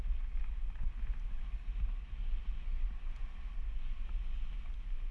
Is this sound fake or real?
real